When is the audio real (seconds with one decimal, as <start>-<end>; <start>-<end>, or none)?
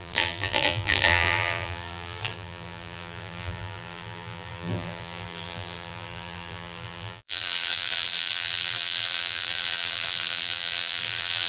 none